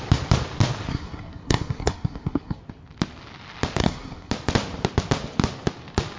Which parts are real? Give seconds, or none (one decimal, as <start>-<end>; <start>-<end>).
0.0-0.9; 2.6-3.8; 4.3-6.2